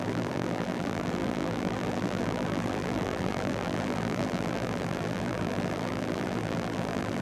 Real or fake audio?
fake